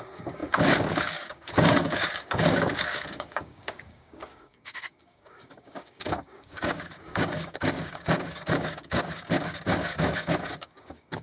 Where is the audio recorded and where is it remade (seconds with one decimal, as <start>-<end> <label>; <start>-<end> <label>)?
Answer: 0.0-11.2 remade